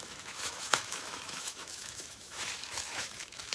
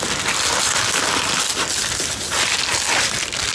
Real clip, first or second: second